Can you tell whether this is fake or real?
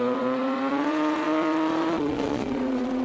fake